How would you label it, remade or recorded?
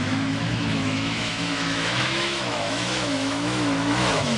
remade